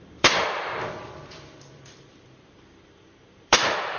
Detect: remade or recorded remade